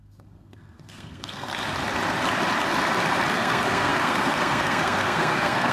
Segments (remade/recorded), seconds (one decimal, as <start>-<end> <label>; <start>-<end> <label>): 0.0-1.5 remade; 1.5-3.3 recorded; 3.3-5.7 remade